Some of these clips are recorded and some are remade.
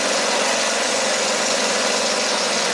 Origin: remade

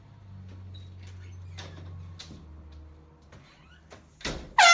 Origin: recorded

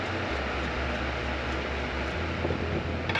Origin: recorded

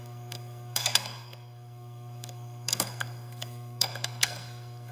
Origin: remade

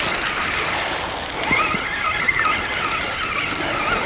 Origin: recorded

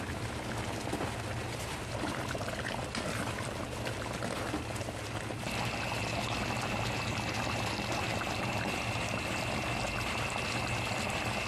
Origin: recorded